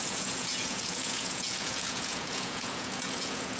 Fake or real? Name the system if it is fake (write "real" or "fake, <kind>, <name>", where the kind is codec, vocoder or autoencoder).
fake, vocoder, Vocos